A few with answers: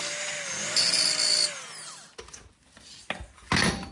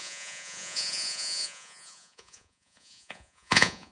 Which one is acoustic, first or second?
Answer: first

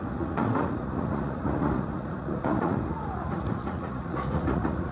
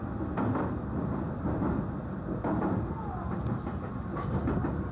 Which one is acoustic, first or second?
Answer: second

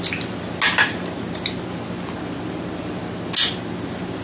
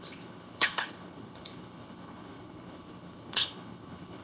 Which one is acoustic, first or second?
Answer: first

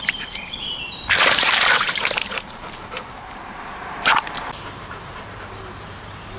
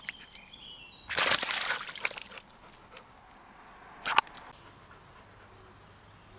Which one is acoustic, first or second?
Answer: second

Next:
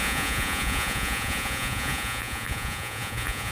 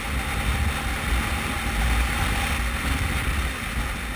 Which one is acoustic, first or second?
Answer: second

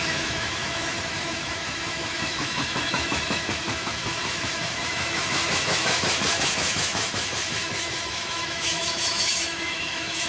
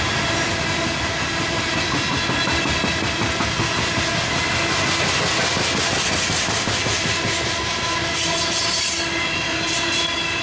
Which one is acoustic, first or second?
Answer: second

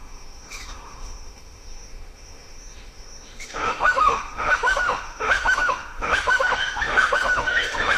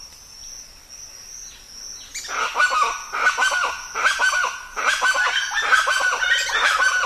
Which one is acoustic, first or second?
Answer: second